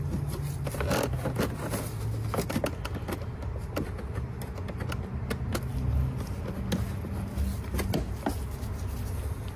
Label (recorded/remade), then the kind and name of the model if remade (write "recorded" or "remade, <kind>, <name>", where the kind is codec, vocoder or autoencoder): recorded